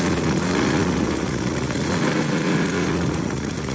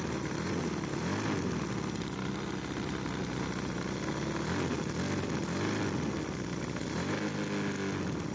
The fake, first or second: first